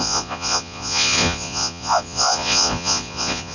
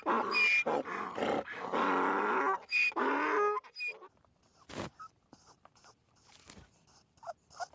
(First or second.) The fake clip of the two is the first